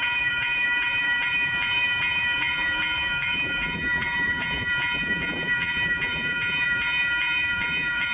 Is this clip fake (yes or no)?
yes